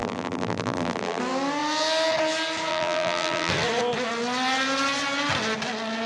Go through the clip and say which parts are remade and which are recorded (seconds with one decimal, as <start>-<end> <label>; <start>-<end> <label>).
0.0-1.2 remade; 1.2-2.7 recorded; 2.7-3.5 remade; 3.5-6.1 recorded